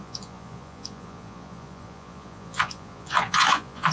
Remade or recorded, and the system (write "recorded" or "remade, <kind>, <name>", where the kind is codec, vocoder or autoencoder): remade, vocoder, Vocos